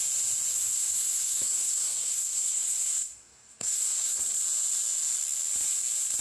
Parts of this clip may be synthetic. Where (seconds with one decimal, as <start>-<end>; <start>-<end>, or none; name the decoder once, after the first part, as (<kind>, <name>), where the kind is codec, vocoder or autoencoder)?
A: 0.5-4.2 (codec, SNAC)